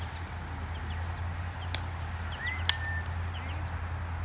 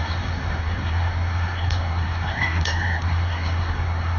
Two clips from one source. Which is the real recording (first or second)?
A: first